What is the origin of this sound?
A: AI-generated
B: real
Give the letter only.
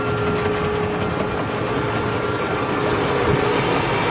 B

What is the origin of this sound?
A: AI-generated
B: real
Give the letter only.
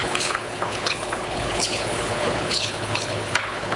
A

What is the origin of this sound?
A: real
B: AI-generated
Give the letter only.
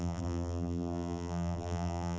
B